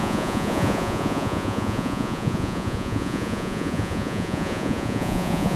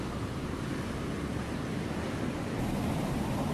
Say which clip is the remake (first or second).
first